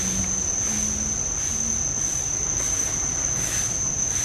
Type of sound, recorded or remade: recorded